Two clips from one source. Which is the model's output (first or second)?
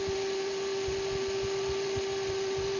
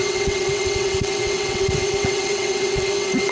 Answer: second